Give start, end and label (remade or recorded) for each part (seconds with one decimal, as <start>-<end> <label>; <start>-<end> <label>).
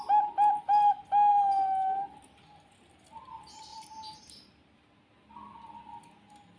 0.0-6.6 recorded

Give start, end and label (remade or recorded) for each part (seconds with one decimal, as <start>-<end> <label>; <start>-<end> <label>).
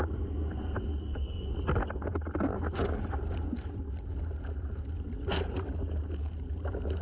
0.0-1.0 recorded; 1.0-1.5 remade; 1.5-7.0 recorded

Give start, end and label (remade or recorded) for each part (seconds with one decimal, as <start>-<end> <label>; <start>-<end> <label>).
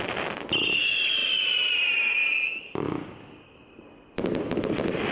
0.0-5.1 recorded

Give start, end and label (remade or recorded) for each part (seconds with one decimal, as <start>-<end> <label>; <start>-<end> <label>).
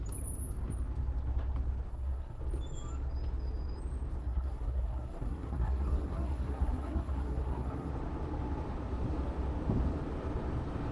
0.0-1.9 recorded; 1.9-2.4 remade; 2.4-4.2 recorded; 4.2-7.9 remade; 7.9-10.9 recorded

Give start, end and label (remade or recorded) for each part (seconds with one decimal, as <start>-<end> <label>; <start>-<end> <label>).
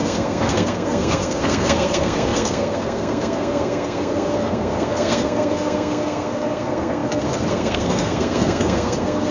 0.0-9.3 remade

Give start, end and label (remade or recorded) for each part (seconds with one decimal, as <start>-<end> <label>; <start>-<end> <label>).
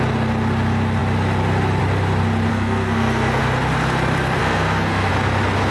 0.0-2.5 recorded; 2.5-3.4 remade; 3.4-4.4 recorded; 4.4-5.1 remade; 5.1-5.7 recorded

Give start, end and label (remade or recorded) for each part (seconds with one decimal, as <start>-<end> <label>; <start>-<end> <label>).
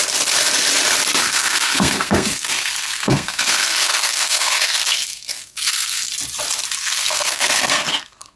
0.0-1.2 recorded; 1.2-6.1 remade; 6.1-6.8 recorded; 6.8-8.4 remade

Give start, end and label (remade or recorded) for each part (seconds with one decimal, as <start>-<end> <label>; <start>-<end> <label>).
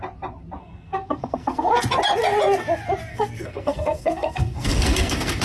0.0-0.6 recorded; 0.6-1.7 remade; 1.7-3.1 recorded; 3.1-5.4 remade